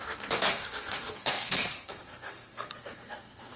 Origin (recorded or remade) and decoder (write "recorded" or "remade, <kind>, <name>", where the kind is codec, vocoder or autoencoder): remade, codec, SNAC